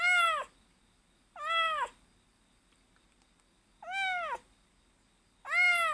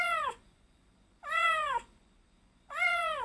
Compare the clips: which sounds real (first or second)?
first